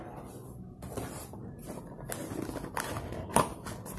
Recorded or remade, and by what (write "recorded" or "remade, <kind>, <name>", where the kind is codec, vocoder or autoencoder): recorded